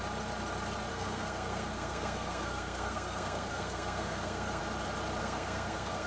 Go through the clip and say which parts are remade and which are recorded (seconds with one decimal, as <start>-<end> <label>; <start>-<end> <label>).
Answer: 0.0-0.9 recorded; 0.9-4.6 remade; 4.6-5.2 recorded; 5.2-6.1 remade